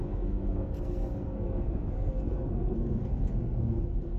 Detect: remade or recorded remade